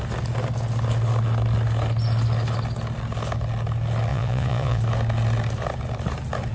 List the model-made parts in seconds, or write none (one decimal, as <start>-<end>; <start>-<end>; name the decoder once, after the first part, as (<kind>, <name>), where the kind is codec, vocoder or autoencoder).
4.1-4.8 (vocoder, Vocos)